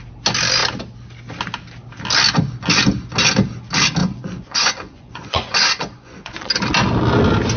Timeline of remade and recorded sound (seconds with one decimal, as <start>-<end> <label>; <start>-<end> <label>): 0.0-4.0 recorded; 4.0-6.5 remade; 6.5-7.6 recorded